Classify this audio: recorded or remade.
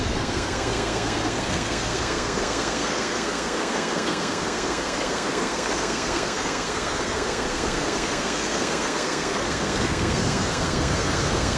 remade